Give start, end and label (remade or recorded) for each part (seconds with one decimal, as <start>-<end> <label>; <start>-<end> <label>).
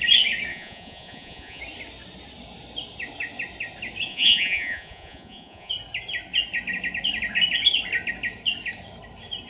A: 0.0-0.5 recorded; 0.5-1.6 remade; 1.6-4.1 recorded; 4.1-5.7 remade; 5.7-9.5 recorded